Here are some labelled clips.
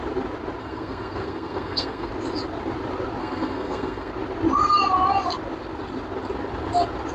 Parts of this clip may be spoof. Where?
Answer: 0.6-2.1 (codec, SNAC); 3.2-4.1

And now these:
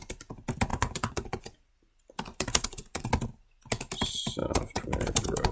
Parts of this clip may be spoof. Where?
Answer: 0.7-1.7 (vocoder, Vocos); 2.3-3.1; 4.4-5.5